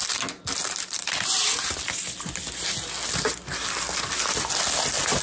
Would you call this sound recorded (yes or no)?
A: yes